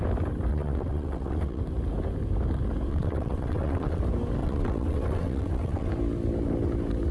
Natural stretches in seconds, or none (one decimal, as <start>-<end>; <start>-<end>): 0.0-0.5; 1.6-2.9; 4.0-4.4; 5.9-7.1